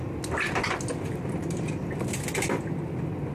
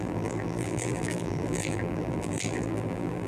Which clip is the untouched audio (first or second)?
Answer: first